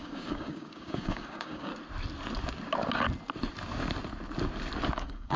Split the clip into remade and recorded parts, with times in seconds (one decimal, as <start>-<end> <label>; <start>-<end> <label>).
0.0-1.7 remade; 1.7-4.9 recorded; 4.9-5.4 remade